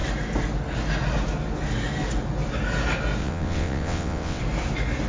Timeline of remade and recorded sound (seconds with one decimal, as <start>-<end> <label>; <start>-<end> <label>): 0.0-3.2 recorded; 3.2-4.4 remade; 4.4-5.1 recorded